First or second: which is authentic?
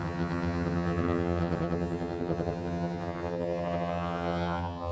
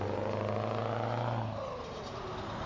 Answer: second